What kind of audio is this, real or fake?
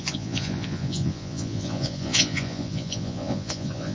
fake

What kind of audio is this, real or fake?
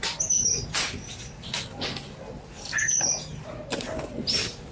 real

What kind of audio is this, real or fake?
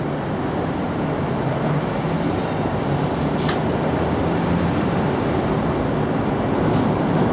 real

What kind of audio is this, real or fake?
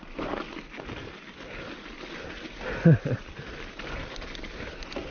real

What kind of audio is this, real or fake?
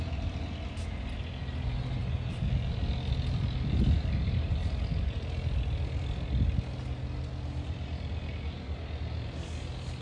real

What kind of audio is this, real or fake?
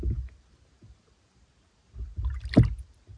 real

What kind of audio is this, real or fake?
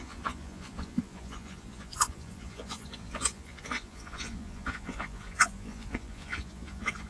fake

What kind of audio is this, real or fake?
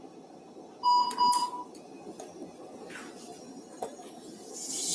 real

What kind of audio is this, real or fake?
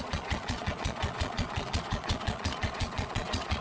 fake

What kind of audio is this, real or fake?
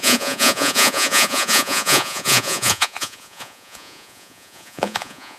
fake